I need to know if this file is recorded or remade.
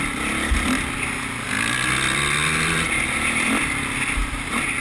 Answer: recorded